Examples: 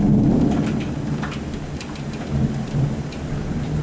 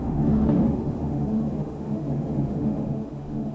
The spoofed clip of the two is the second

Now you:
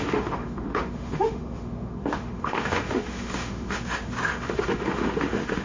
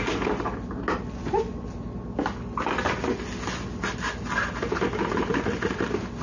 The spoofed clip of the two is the first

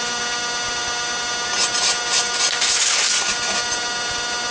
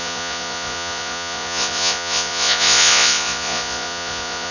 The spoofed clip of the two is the second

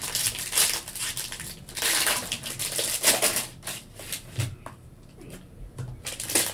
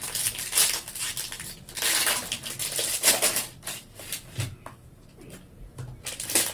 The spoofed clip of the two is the first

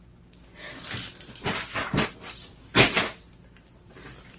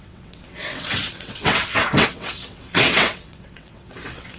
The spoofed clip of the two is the second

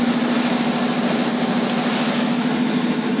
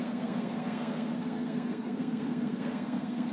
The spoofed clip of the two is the second